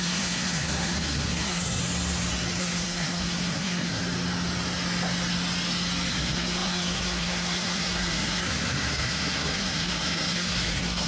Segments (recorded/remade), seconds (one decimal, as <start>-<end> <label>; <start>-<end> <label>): 0.0-1.8 remade; 1.8-2.6 recorded; 2.6-4.0 remade; 4.0-6.1 recorded; 6.1-11.1 remade